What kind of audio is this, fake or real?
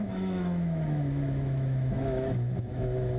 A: fake